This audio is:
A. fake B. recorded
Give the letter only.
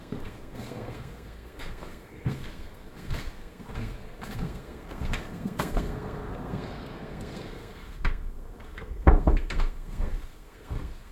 A